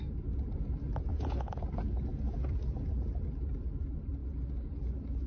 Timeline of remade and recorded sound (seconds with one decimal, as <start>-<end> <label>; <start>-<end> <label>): 0.0-1.1 recorded; 1.1-1.6 remade; 1.6-5.3 recorded